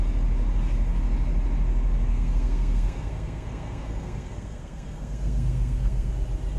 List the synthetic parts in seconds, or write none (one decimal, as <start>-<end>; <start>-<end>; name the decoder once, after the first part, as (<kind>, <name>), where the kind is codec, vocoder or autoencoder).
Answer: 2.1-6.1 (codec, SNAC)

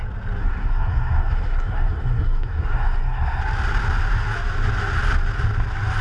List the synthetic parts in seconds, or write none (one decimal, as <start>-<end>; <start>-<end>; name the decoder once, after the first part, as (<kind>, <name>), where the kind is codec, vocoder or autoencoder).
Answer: 0.4-3.4 (codec, SNAC)

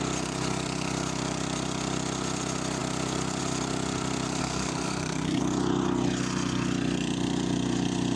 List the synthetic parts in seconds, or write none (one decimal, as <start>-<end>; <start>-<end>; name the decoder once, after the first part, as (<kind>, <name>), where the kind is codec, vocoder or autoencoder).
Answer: 4.4-5.4 (codec, SNAC)

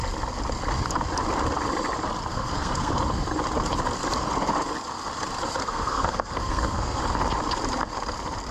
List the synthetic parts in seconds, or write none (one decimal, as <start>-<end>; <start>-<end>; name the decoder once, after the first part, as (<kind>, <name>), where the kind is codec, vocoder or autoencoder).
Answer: 2.3-2.9 (codec, SNAC); 5.6-7.0

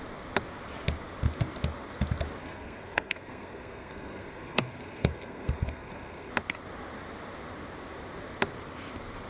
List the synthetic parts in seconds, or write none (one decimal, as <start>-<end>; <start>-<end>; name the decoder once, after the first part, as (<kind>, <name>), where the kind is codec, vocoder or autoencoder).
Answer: 2.4-6.3 (codec, SNAC)

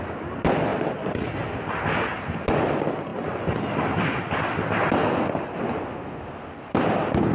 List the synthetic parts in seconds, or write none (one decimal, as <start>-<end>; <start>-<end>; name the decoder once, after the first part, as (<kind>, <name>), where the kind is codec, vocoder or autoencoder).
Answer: none